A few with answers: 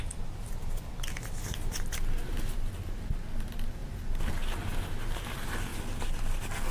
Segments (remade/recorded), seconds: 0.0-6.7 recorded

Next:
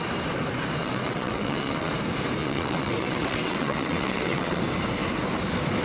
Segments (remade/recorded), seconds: 0.0-0.8 recorded; 0.8-1.9 remade; 1.9-2.4 recorded; 2.4-4.6 remade; 4.6-5.8 recorded

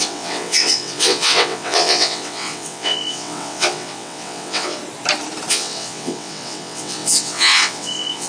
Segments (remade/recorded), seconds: 0.0-4.8 remade; 4.8-5.5 recorded; 5.5-8.3 remade